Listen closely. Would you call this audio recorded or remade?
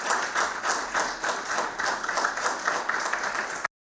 recorded